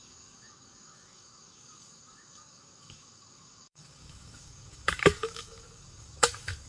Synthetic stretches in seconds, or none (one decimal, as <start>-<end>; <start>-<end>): 0.0-6.7